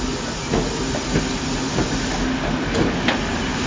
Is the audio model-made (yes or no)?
no